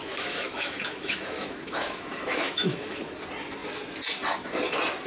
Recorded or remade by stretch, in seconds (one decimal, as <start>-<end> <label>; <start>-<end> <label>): 0.0-3.1 remade; 3.1-5.1 recorded